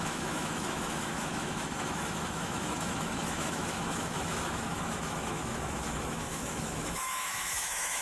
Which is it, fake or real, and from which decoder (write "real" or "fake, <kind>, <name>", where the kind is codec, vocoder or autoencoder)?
fake, autoencoder, DAC-VAE